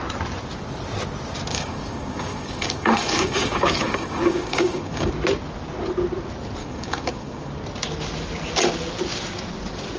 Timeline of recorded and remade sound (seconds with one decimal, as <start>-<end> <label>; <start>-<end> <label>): 0.0-1.5 recorded; 1.5-5.1 remade; 5.1-6.6 recorded; 6.6-7.5 remade; 7.5-10.0 recorded